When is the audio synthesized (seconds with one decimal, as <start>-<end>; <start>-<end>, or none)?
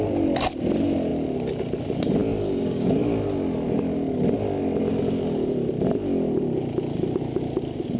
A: 2.2-2.9